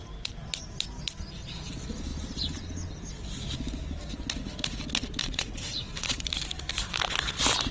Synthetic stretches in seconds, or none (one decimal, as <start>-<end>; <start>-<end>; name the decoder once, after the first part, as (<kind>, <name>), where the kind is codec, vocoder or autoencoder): 5.2-6.3 (vocoder, WaveNeXt)